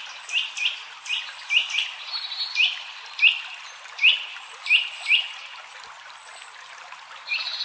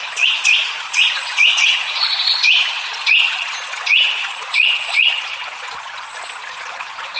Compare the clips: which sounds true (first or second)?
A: first